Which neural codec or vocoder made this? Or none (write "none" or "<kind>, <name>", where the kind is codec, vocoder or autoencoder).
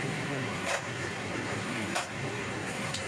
codec, SNAC